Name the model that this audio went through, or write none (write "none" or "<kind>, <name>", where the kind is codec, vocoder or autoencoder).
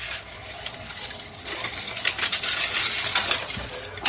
none